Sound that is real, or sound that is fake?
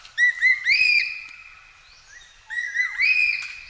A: real